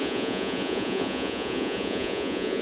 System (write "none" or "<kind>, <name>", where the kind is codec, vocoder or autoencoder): vocoder, Vocos